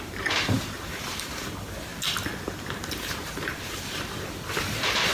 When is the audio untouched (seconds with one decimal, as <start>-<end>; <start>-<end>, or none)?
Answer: 1.9-2.6